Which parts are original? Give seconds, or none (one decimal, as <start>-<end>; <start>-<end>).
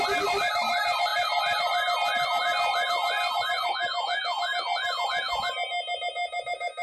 0.0-6.8